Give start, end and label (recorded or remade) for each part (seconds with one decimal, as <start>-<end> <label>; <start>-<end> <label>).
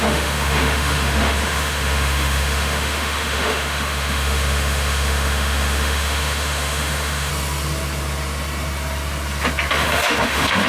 0.0-7.3 remade; 7.3-9.7 recorded; 9.7-10.7 remade